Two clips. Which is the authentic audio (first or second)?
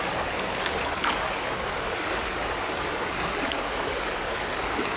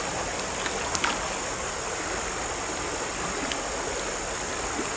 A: second